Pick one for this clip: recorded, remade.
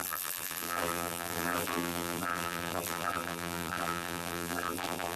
remade